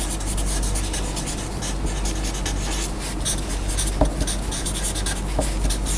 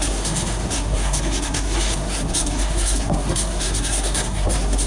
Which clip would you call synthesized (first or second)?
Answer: second